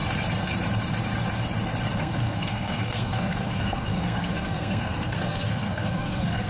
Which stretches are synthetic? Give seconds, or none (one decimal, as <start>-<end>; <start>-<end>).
2.0-6.5